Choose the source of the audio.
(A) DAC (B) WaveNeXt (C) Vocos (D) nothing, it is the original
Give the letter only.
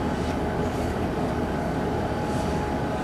A